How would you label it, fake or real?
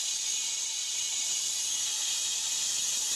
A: real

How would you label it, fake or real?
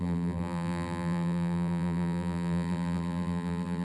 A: fake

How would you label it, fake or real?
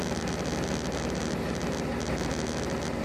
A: real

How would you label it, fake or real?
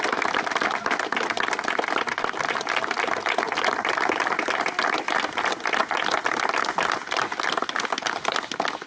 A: real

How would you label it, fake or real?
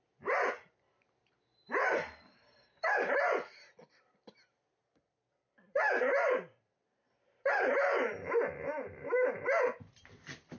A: real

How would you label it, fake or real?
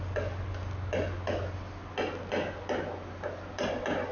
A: real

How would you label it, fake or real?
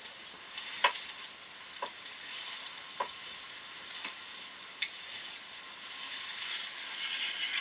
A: real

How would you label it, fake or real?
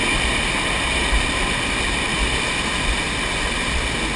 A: real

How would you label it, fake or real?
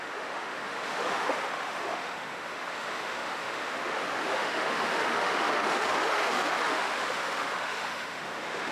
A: fake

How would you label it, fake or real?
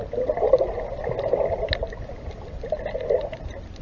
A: real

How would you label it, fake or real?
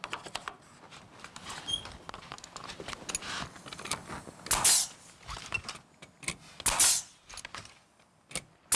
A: real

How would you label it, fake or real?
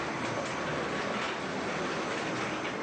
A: real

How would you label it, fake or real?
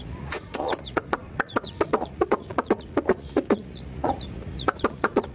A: fake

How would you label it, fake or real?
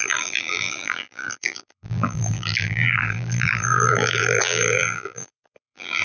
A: fake